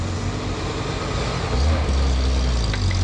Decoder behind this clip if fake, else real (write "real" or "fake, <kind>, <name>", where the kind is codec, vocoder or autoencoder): real